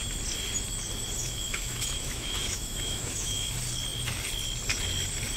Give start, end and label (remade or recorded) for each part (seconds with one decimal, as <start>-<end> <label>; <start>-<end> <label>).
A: 0.0-1.2 recorded; 1.2-3.5 remade; 3.5-5.4 recorded

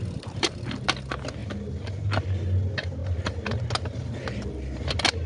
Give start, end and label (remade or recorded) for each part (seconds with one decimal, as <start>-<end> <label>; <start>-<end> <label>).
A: 0.0-5.3 recorded

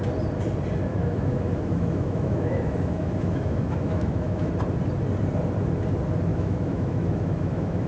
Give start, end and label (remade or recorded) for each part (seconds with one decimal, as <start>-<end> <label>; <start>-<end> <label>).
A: 0.0-0.9 recorded; 0.9-4.5 remade; 4.5-6.3 recorded; 6.3-7.9 remade

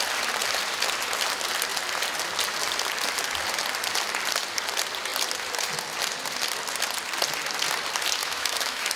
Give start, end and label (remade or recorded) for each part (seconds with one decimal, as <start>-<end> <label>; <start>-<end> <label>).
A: 0.0-8.2 recorded; 8.2-9.0 remade

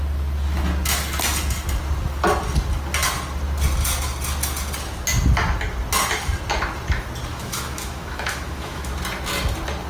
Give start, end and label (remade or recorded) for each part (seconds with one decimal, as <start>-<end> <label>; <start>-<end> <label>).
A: 0.0-7.3 recorded; 7.3-8.9 remade; 8.9-9.9 recorded

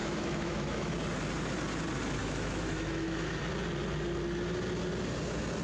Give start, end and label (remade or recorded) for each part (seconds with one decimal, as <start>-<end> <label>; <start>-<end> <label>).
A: 0.0-0.9 remade; 0.9-2.2 recorded; 2.2-3.4 remade; 3.4-5.6 recorded

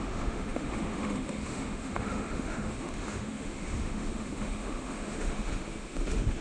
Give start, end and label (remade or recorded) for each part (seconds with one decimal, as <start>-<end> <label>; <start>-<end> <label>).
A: 0.0-6.4 remade